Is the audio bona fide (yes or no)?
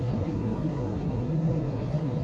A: no